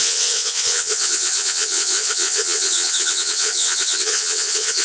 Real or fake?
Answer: fake